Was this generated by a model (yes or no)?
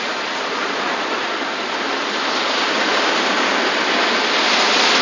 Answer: no